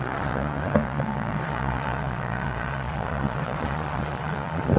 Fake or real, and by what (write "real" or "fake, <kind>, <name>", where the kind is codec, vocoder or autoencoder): fake, vocoder, Vocos